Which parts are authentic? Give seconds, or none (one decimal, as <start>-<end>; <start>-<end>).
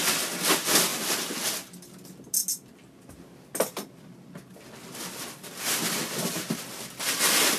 0.0-7.6